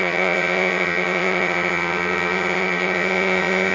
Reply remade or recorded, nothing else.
remade